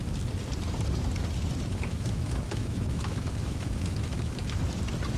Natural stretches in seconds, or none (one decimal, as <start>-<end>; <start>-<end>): 0.0-1.7; 4.6-5.2